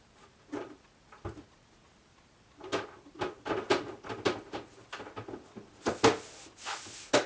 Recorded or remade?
recorded